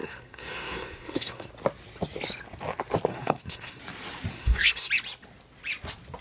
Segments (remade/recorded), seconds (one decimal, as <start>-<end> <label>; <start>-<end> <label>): 0.0-1.5 remade; 1.5-3.1 recorded; 3.1-3.8 remade; 3.8-4.3 recorded; 4.3-4.9 remade; 4.9-6.2 recorded